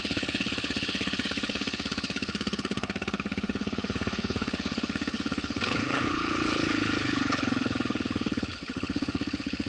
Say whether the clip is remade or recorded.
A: remade